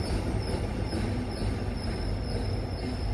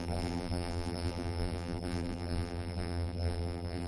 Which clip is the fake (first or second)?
second